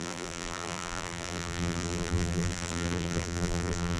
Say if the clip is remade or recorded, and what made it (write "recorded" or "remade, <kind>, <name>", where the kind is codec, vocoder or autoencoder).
remade, vocoder, BigVGAN v2